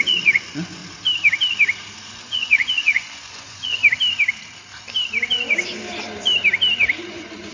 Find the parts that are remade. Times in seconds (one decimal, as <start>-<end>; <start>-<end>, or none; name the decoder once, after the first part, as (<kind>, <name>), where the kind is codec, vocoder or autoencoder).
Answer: 0.0-0.8 (vocoder, Vocos); 2.0-3.8; 7.1-7.5